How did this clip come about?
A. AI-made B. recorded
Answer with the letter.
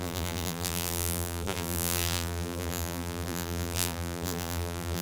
A